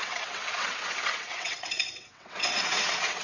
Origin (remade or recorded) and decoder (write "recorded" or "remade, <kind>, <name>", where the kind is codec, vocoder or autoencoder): remade, vocoder, WaveNeXt